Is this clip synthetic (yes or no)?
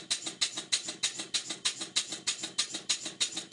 no